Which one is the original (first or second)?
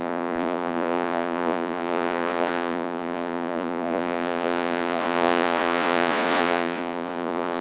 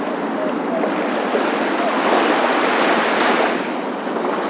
second